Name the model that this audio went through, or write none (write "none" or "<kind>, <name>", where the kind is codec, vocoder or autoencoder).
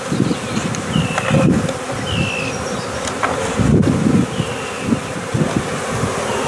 none